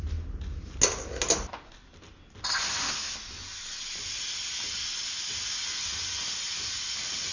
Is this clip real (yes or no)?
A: yes